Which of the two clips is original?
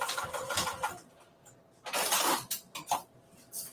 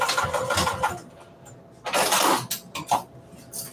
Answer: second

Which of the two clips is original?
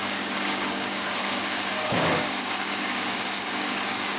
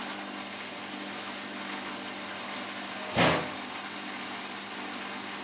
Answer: second